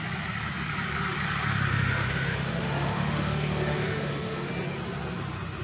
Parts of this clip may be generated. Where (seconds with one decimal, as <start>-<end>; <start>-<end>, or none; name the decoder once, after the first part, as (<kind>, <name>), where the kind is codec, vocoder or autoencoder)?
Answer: 1.7-4.5 (autoencoder, DAC-VAE)